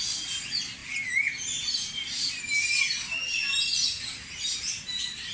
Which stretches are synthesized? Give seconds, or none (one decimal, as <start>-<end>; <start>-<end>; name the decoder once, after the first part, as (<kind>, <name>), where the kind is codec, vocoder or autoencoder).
none